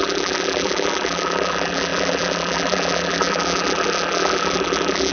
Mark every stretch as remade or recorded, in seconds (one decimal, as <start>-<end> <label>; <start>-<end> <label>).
0.0-5.1 remade